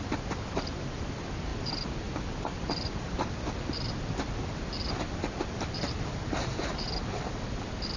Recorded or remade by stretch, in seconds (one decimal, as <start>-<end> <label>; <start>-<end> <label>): 0.0-8.0 recorded

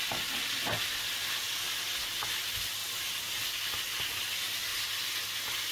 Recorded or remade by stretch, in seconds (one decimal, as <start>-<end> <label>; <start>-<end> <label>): 0.0-5.7 recorded

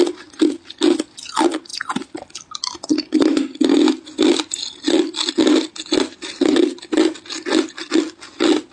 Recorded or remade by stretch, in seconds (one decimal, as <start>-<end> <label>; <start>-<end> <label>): 0.0-8.7 recorded

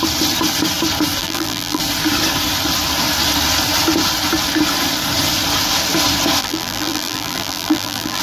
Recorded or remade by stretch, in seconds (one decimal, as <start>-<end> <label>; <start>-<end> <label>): 0.0-1.2 recorded; 1.2-1.8 remade; 1.8-6.4 recorded; 6.4-8.2 remade